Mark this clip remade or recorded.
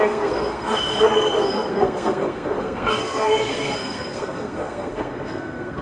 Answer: remade